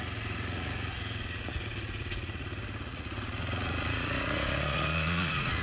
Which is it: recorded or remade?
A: remade